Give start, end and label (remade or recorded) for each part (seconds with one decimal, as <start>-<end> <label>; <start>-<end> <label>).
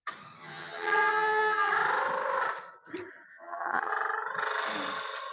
0.0-0.4 recorded; 0.4-1.7 remade; 1.7-3.3 recorded; 3.3-3.9 remade; 3.9-5.3 recorded